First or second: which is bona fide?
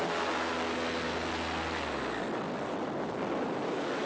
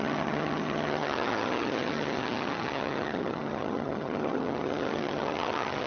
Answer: first